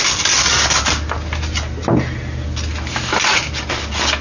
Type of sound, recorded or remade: recorded